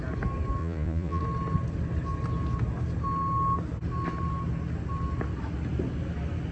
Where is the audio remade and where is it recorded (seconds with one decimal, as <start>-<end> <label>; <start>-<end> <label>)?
0.0-0.6 recorded; 0.6-1.2 remade; 1.2-6.5 recorded